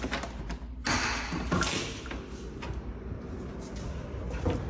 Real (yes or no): yes